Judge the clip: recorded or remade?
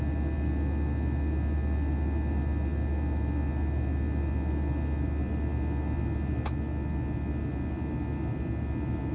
recorded